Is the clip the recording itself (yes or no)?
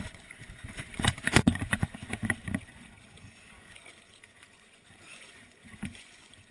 no